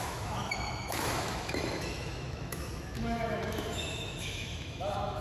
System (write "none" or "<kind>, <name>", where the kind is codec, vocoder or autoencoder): autoencoder, DAC-VAE